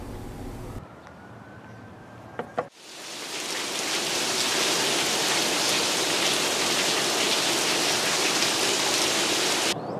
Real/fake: real